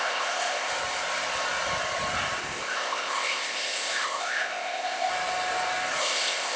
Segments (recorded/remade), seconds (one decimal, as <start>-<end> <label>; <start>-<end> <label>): 0.0-0.7 remade; 0.7-2.4 recorded; 2.4-5.1 remade; 5.1-6.0 recorded; 6.0-6.6 remade